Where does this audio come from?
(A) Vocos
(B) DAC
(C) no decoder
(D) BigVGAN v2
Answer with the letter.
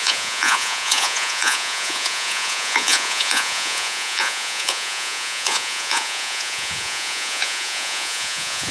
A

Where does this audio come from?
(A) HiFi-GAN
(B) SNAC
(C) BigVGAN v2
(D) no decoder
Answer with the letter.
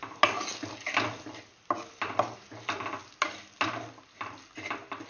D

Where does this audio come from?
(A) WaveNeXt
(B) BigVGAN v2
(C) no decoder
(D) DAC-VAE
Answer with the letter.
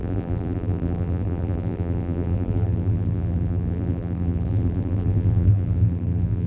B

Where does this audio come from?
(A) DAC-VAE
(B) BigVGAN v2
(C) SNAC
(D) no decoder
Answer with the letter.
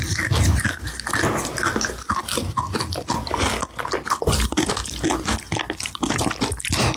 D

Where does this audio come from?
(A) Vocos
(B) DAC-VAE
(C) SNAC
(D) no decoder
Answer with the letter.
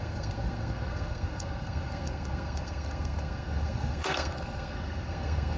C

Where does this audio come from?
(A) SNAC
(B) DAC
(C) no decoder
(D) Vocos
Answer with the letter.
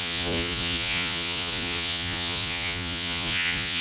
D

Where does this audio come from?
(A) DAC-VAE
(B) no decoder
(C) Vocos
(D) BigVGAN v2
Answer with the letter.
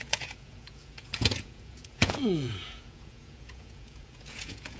C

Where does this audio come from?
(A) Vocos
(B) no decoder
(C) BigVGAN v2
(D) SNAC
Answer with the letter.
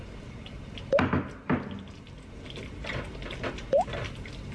B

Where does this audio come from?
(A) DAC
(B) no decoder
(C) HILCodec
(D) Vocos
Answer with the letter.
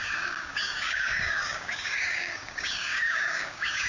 A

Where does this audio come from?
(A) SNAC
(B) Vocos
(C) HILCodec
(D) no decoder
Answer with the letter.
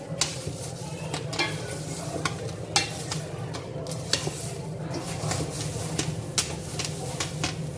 D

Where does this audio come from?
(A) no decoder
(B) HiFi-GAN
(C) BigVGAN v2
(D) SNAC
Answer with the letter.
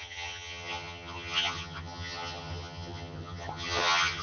B